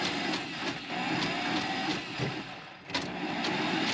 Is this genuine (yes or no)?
yes